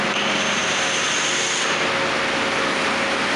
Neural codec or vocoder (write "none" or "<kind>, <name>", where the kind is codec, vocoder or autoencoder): none